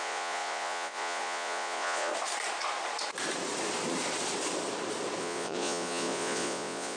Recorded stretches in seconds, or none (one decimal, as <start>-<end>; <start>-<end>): 2.1-5.2